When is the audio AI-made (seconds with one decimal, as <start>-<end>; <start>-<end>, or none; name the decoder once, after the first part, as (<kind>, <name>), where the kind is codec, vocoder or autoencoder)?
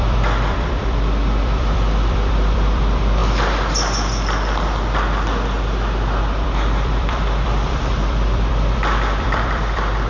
0.0-3.2 (vocoder, BigVGAN v2); 6.2-10.1